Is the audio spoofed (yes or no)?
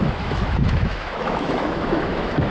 yes